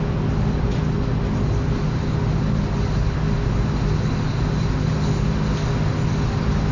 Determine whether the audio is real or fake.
real